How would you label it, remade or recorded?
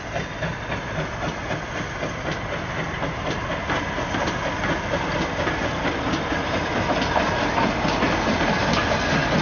recorded